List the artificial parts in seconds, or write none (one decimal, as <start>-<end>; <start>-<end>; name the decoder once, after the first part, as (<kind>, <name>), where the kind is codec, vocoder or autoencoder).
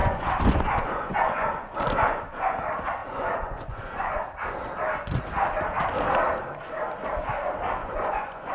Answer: 0.0-2.2 (vocoder, Vocos); 3.0-4.2; 7.8-8.5